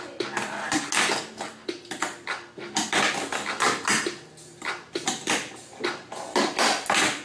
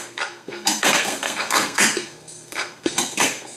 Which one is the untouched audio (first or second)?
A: first